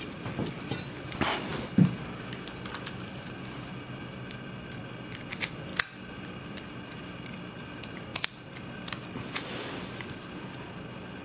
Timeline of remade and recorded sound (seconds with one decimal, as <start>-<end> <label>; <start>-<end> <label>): 0.0-11.2 recorded